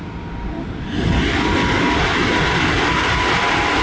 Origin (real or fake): real